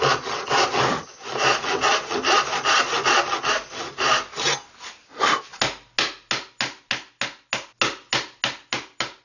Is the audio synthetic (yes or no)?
no